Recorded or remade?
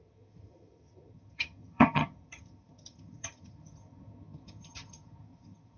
remade